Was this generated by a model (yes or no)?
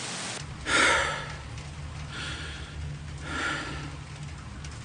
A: no